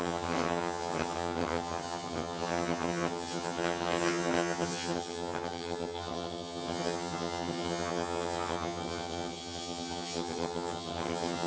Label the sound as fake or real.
fake